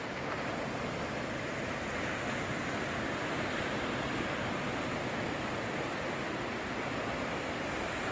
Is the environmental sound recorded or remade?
recorded